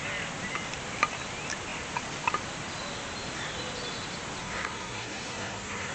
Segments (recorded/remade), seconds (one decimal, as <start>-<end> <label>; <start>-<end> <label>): 0.0-4.4 recorded; 4.4-5.9 remade